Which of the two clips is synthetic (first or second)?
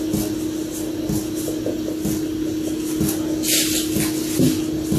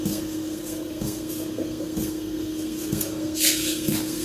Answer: second